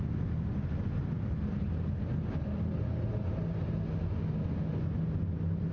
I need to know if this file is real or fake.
real